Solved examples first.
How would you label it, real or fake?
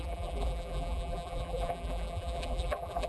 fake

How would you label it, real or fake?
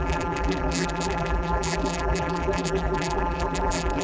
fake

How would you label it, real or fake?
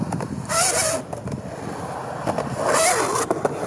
real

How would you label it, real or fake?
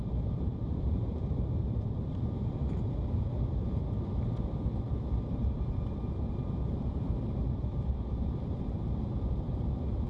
fake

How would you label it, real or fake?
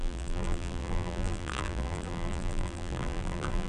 fake